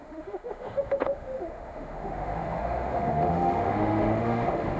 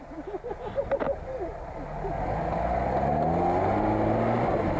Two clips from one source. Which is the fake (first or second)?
first